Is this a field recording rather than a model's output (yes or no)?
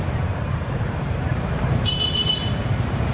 no